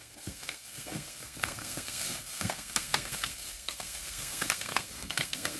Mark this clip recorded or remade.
remade